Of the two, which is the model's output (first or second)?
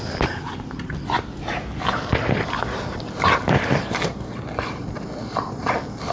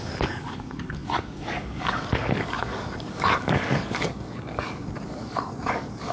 second